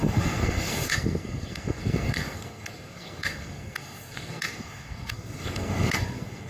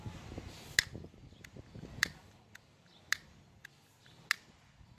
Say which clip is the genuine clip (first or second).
second